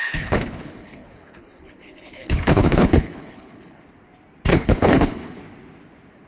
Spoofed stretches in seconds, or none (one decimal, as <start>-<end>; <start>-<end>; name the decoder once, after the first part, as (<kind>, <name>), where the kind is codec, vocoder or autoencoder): 0.0-3.8 (codec, HILCodec); 4.5-5.4